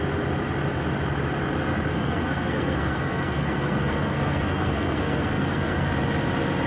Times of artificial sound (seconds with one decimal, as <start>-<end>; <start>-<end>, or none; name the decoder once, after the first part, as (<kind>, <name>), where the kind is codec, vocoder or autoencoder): 1.9-5.9 (codec, SNAC)